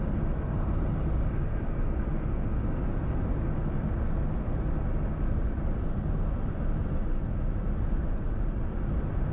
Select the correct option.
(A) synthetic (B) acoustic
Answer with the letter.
B